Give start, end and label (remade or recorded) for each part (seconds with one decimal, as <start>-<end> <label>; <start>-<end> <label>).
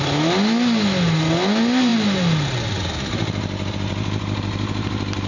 0.0-5.3 recorded